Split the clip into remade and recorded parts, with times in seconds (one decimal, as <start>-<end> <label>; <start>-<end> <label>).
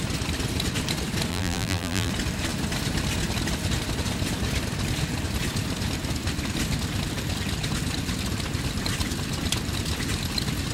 0.0-1.3 recorded; 1.3-2.1 remade; 2.1-10.7 recorded